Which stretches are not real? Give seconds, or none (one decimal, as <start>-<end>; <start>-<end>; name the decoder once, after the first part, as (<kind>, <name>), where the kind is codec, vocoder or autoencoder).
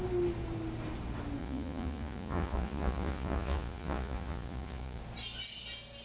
1.4-5.0 (vocoder, Vocos)